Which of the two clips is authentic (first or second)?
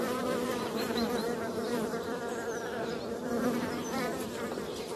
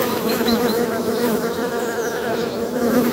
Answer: first